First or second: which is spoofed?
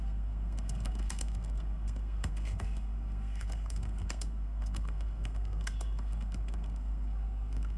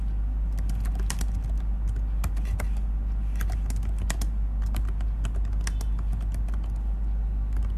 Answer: first